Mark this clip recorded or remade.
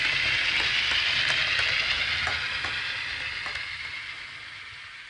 recorded